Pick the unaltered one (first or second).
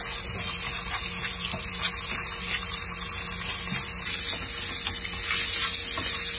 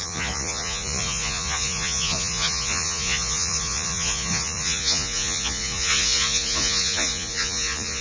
first